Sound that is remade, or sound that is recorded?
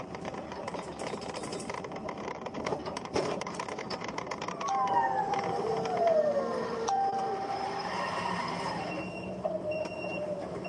remade